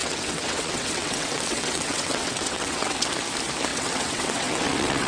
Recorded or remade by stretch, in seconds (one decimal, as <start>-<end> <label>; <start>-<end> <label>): 0.0-3.1 remade; 3.1-3.7 recorded; 3.7-5.1 remade